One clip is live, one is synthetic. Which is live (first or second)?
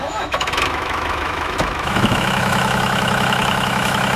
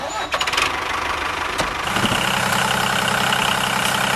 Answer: second